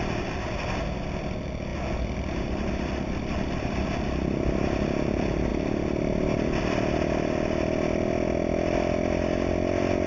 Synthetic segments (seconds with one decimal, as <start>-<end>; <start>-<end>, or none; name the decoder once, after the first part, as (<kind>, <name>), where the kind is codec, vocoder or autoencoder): none